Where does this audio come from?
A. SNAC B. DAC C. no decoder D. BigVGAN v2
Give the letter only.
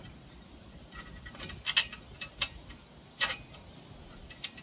D